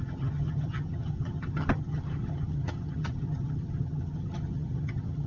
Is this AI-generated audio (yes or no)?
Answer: yes